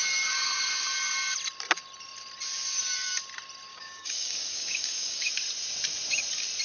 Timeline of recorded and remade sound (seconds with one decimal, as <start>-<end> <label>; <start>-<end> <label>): 0.0-3.7 recorded; 3.7-5.3 remade; 5.3-6.6 recorded